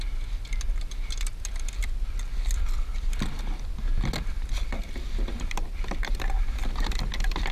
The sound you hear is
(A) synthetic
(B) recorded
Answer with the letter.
B